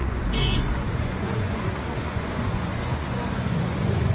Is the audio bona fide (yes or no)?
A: no